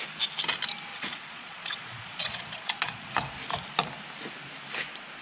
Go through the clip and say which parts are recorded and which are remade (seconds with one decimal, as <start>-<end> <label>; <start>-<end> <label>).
0.0-0.9 recorded; 0.9-3.1 remade; 3.1-5.2 recorded

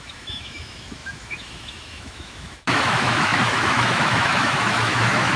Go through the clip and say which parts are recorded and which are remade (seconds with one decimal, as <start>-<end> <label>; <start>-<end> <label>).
0.0-5.4 remade

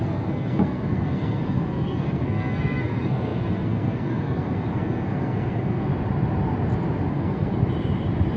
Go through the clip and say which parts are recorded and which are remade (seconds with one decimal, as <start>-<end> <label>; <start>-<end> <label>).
0.0-5.9 remade; 5.9-7.1 recorded; 7.1-7.5 remade; 7.5-8.4 recorded

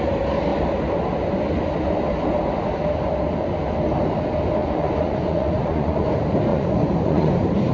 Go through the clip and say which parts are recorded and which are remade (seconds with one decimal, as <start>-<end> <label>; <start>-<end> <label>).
0.0-4.6 recorded; 4.6-6.1 remade; 6.1-6.5 recorded; 6.5-7.3 remade; 7.3-7.7 recorded

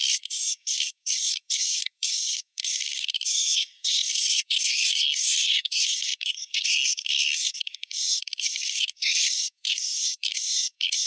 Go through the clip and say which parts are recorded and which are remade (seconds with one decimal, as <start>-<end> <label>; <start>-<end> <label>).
0.0-11.1 remade

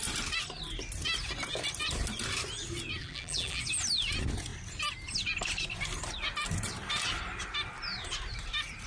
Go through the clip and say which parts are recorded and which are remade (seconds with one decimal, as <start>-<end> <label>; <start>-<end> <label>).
0.0-3.0 recorded; 3.0-3.6 remade; 3.6-8.9 recorded

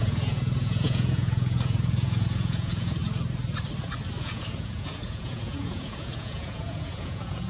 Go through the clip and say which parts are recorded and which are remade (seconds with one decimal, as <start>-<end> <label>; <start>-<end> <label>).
0.0-3.0 remade; 3.0-4.2 recorded; 4.2-7.5 remade